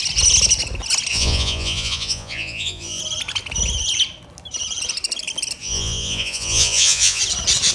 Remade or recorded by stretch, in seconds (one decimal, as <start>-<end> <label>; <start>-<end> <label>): 0.0-1.1 recorded; 1.1-3.0 remade; 3.0-5.6 recorded; 5.6-7.2 remade; 7.2-7.7 recorded